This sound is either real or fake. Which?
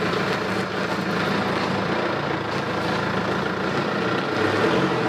real